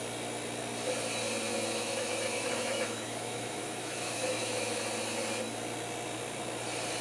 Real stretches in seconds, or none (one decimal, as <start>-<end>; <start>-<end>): 0.0-1.5; 4.8-7.0